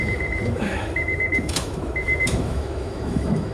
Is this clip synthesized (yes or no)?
yes